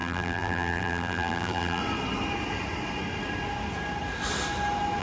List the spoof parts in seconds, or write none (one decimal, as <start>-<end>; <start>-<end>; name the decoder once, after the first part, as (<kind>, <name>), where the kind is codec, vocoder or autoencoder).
0.0-1.8 (vocoder, BigVGAN v2)